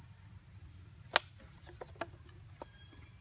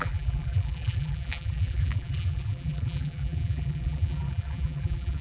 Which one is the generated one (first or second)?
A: second